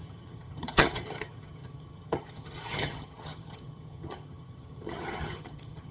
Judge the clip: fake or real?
fake